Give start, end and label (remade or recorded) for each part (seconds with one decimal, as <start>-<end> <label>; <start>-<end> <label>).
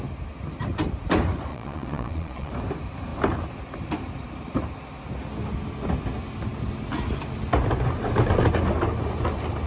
0.0-1.5 recorded; 1.5-2.5 remade; 2.5-9.7 recorded